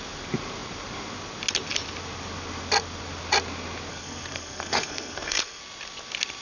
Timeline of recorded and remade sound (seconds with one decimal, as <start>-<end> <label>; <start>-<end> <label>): 0.0-3.9 recorded; 3.9-5.6 remade; 5.6-6.4 recorded